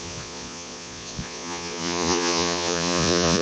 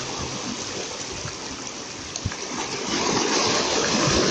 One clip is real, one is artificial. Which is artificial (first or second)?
first